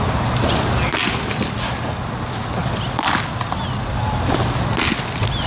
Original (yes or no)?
yes